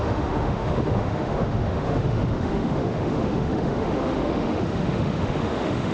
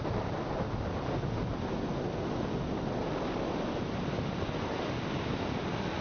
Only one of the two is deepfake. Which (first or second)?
first